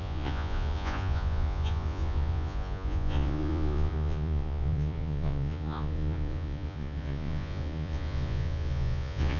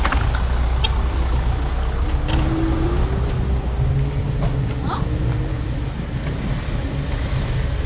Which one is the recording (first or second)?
second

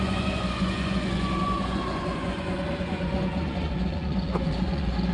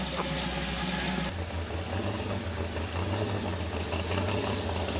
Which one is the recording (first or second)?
second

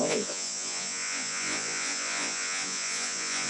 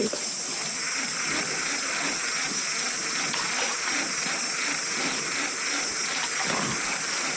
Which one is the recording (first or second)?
second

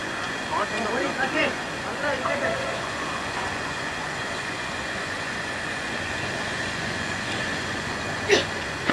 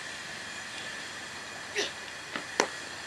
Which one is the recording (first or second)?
second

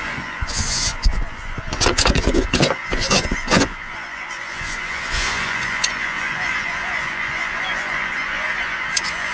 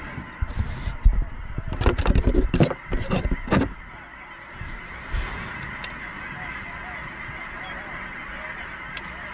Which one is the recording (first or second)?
second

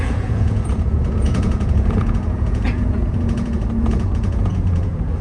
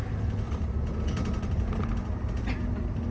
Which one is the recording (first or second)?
second